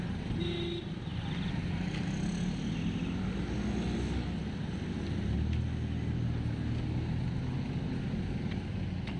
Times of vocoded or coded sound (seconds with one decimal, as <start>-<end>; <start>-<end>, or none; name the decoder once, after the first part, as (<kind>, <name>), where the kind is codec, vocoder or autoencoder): none